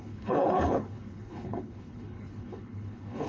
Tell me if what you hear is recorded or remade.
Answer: remade